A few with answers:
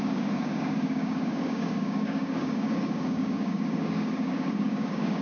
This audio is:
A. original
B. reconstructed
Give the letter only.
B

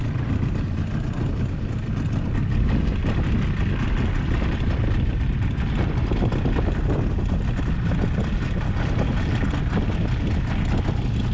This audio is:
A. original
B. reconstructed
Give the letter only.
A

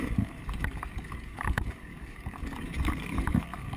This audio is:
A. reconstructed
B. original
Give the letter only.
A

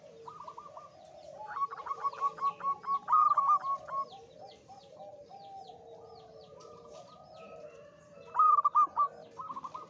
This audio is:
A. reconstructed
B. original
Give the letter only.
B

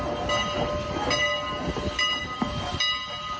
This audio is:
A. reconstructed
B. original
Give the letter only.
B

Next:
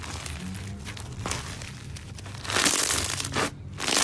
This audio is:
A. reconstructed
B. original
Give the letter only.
B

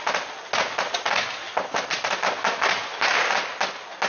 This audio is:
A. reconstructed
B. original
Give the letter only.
B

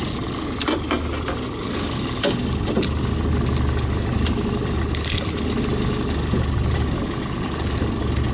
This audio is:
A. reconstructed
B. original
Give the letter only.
B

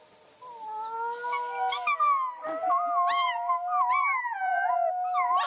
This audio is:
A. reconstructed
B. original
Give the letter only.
B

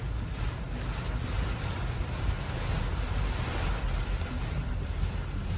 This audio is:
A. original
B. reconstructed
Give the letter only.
A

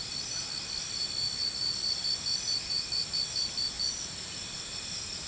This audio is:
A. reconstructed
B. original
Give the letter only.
B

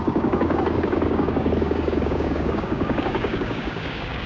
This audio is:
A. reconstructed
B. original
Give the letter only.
A